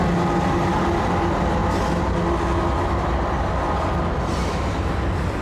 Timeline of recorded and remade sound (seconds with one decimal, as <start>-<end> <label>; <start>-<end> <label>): 0.0-5.4 recorded